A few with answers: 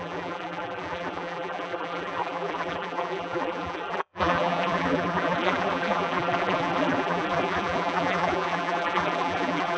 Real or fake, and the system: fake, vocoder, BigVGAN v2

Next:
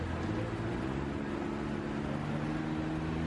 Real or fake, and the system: real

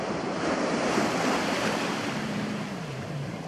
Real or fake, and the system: fake, vocoder, BigVGAN v2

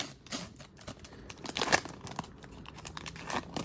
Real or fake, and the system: real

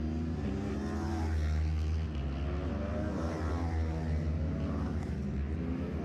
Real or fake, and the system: real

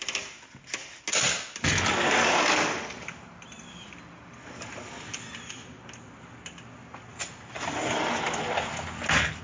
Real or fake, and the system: real